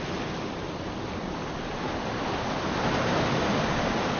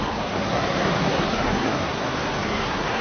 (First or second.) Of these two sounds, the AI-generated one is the second